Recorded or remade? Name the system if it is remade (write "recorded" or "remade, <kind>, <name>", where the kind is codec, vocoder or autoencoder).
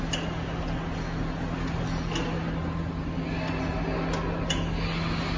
recorded